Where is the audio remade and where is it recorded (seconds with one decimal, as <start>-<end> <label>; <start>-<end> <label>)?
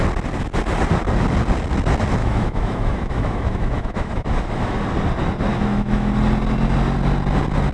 0.0-2.2 recorded; 2.2-4.8 remade; 4.8-5.5 recorded; 5.5-6.1 remade; 6.1-7.7 recorded